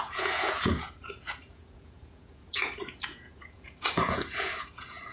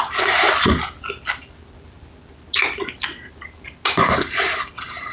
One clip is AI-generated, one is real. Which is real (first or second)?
second